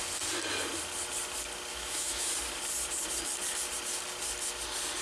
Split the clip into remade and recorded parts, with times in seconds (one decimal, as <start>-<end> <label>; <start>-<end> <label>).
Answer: 0.0-1.7 recorded; 1.7-2.3 remade; 2.3-5.0 recorded